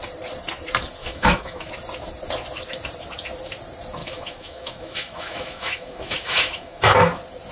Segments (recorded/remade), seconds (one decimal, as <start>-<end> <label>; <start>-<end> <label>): 0.0-1.0 recorded; 1.0-1.7 remade; 1.7-4.0 recorded; 4.0-6.8 remade; 6.8-7.5 recorded

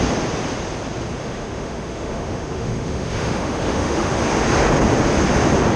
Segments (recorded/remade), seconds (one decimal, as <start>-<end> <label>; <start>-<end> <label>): 0.0-1.2 recorded; 1.2-4.1 remade; 4.1-5.8 recorded

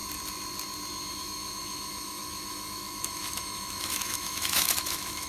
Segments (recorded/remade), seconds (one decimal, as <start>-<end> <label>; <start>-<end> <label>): 0.0-1.1 recorded; 1.1-5.3 remade